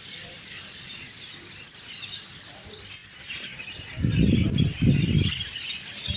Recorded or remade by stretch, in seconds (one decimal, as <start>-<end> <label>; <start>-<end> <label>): 0.0-6.2 recorded